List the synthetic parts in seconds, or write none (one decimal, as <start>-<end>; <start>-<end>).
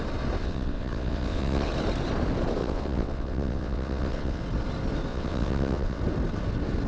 0.4-1.7; 2.6-4.4; 5.1-6.0